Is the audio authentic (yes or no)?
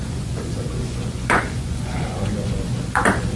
no